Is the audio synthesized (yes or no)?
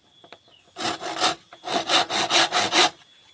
no